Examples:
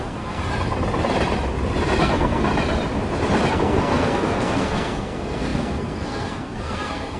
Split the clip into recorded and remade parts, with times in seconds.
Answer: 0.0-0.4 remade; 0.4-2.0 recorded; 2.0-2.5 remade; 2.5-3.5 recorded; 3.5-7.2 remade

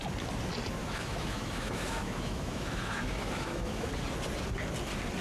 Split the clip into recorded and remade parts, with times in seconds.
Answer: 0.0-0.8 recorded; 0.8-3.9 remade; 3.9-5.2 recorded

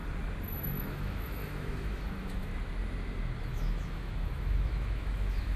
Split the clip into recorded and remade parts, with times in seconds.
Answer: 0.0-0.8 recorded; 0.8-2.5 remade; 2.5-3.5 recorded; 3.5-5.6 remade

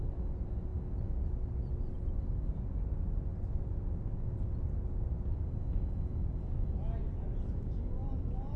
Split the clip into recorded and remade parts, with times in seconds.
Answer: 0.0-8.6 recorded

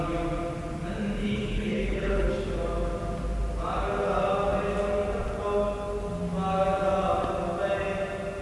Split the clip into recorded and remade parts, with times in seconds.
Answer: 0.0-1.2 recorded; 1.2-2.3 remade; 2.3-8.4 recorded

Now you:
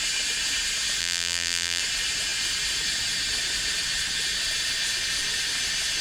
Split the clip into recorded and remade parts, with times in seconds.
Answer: 0.0-1.0 recorded; 1.0-1.8 remade; 1.8-6.0 recorded